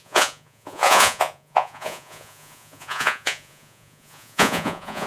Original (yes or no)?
no